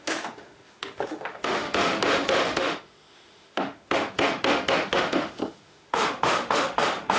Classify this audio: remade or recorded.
remade